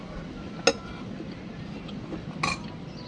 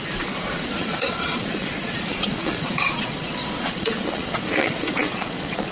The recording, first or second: first